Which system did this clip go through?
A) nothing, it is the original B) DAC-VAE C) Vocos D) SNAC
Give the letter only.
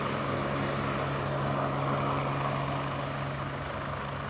A